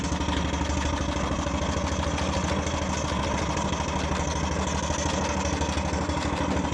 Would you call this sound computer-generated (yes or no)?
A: no